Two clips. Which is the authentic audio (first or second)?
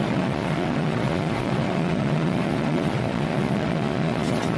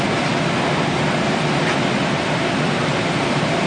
second